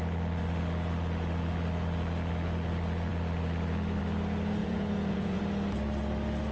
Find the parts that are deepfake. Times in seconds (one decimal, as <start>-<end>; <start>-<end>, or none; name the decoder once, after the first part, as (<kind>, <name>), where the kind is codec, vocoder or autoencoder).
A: 4.6-5.4 (vocoder, Vocos)